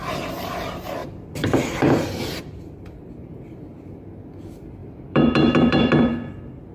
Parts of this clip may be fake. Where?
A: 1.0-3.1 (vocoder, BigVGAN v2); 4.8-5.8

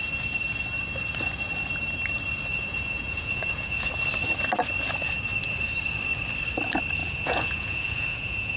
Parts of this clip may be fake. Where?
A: 2.5-3.9 (vocoder, Vocos); 7.0-8.6

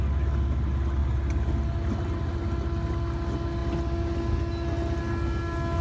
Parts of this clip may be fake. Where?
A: none

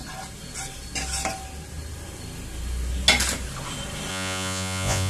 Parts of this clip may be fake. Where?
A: 4.1-5.1 (vocoder, Vocos)

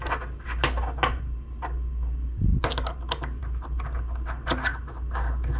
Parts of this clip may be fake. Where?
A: none

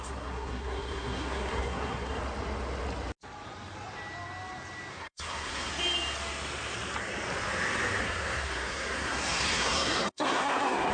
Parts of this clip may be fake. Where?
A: 0.0-2.2 (codec, SNAC); 4.9-5.7; 8.0-10.9